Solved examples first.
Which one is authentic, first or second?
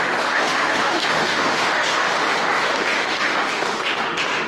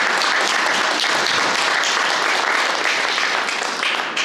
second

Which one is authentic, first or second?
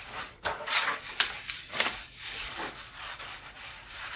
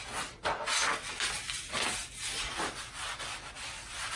second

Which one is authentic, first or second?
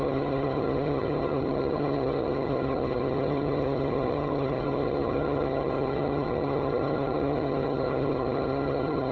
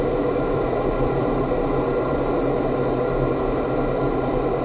second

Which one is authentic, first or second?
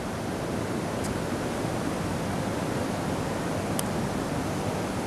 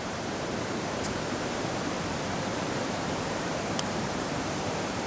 first